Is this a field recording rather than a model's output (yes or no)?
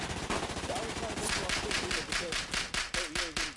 yes